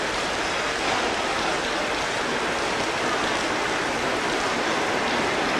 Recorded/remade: recorded